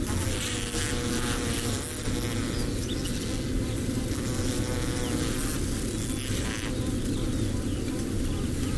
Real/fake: real